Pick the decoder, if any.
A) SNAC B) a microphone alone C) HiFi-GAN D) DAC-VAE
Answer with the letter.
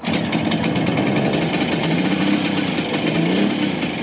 B